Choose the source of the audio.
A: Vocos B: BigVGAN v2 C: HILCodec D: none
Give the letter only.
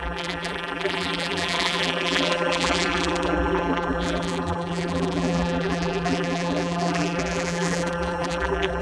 B